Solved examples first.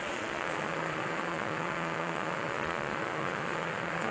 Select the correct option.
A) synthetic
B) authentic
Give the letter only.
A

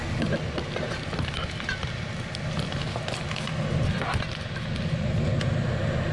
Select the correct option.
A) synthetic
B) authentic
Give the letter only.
B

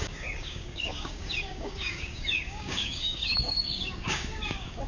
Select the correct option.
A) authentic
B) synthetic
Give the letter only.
B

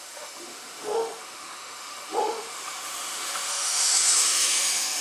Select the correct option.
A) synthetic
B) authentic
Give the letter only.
A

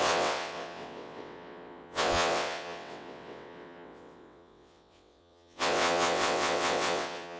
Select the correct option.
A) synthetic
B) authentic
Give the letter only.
A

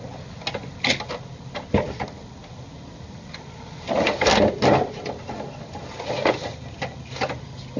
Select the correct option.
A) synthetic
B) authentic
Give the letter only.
B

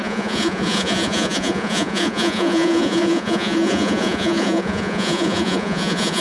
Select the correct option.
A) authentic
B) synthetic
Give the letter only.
B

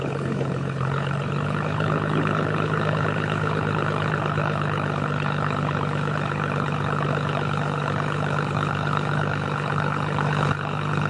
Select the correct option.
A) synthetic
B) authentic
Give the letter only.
A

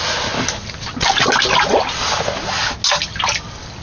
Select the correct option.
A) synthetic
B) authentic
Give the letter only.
B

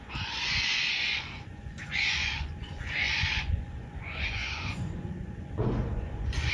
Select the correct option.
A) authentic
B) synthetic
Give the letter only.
B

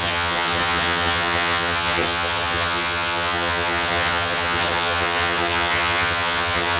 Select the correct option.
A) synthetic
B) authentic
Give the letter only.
A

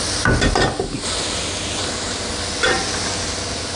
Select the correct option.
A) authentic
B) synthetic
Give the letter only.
A